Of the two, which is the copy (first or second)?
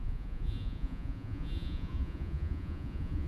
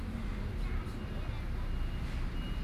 first